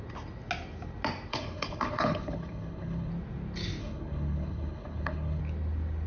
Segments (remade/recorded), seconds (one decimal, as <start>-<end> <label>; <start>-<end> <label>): 0.0-1.3 recorded; 1.3-3.1 remade; 3.1-3.8 recorded; 3.8-5.4 remade; 5.4-6.1 recorded